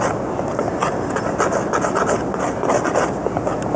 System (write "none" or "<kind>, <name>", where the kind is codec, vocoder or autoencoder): none